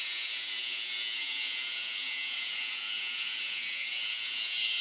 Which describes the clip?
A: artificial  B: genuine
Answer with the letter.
A